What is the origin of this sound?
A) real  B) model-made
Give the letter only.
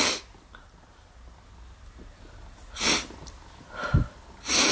A